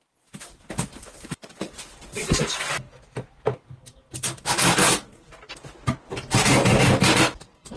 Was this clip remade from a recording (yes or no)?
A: no